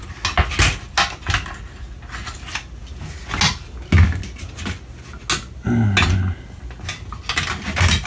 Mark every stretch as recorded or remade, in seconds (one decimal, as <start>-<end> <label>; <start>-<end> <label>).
0.0-8.1 recorded